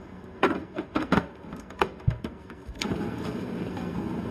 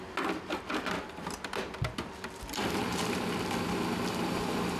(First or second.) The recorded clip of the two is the second